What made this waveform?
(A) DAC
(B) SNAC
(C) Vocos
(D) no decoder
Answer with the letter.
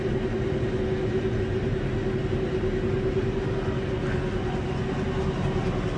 D